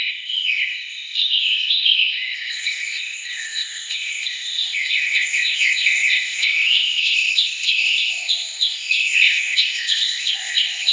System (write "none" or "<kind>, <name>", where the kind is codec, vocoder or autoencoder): codec, ZipCodec